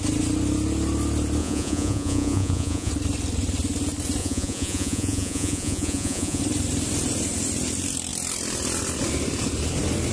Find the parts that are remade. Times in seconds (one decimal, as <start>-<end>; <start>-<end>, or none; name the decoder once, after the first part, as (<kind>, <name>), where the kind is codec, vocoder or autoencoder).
1.4-2.9 (vocoder, Vocos); 4.2-6.4